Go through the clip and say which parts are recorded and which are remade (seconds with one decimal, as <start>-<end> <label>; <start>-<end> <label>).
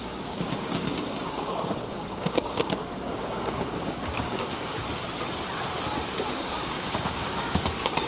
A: 0.0-4.8 remade; 4.8-6.3 recorded; 6.3-8.1 remade